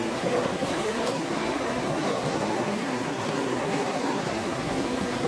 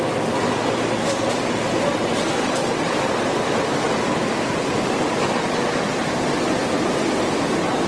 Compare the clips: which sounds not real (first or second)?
first